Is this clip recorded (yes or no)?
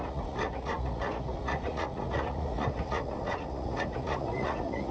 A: no